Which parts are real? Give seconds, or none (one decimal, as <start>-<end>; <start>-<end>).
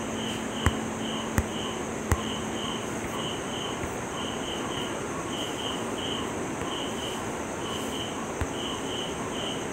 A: 0.0-1.5; 6.6-9.7